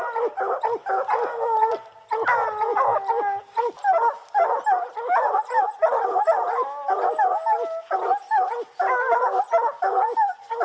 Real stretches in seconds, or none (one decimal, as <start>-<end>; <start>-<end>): 0.0-10.6